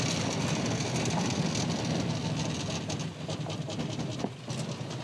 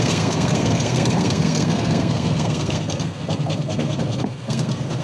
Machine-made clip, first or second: second